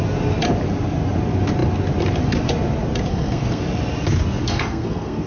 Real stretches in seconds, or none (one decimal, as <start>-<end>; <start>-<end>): 0.0-3.1; 3.6-4.4